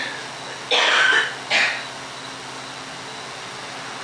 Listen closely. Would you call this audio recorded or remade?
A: recorded